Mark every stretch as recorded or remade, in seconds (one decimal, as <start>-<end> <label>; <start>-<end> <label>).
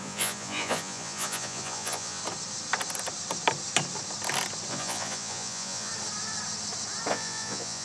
0.0-2.2 remade; 2.2-4.7 recorded; 4.7-5.9 remade; 5.9-7.1 recorded; 7.1-7.8 remade